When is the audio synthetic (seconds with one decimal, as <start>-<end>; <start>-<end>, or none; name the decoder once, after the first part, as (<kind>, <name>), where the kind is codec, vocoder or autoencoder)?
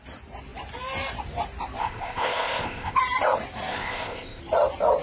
1.8-3.0 (codec, ZipCodec); 3.7-4.4